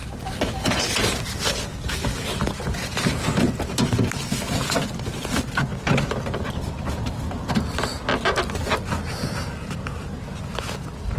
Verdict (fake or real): real